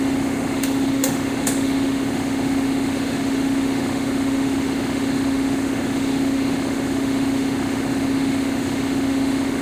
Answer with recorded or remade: remade